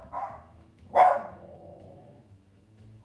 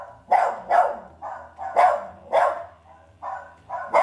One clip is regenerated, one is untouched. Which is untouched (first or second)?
second